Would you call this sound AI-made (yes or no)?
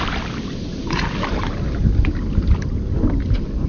no